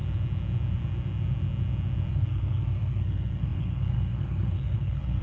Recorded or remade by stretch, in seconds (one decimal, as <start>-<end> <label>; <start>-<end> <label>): 0.0-2.1 recorded; 2.1-5.2 remade